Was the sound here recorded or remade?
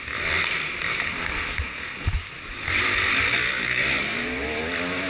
recorded